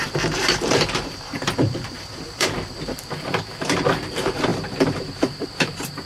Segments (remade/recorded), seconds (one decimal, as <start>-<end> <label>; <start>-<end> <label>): 0.0-6.1 remade